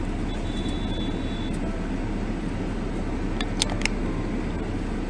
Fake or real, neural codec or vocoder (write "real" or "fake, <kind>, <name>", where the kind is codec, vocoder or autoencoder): real